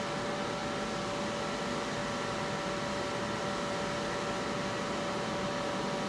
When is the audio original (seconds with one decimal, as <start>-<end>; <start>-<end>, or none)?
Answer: 0.0-6.1